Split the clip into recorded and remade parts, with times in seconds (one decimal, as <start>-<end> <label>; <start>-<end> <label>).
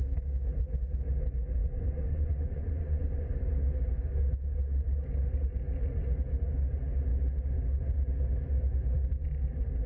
0.0-1.6 recorded; 1.6-3.5 remade; 3.5-9.9 recorded